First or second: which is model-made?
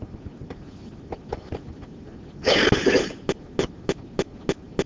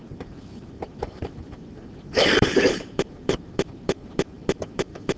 second